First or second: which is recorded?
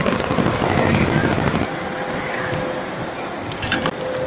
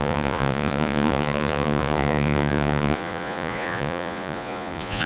first